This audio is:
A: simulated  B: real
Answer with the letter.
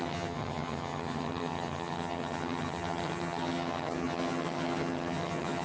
A